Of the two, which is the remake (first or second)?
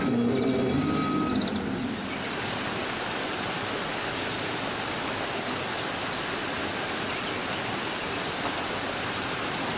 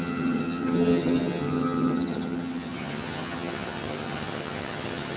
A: second